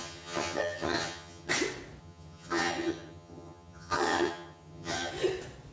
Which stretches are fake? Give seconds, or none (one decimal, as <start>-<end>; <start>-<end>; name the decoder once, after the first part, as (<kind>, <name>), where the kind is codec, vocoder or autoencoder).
0.0-1.5 (vocoder, HiFi-GAN); 2.0-5.1